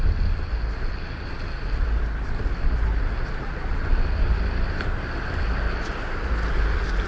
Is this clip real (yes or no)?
yes